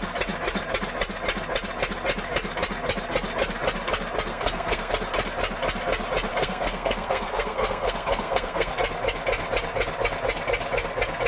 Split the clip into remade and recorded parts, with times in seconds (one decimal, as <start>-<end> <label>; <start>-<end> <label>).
0.0-4.3 recorded; 4.3-4.9 remade; 4.9-6.3 recorded; 6.3-8.7 remade; 8.7-11.3 recorded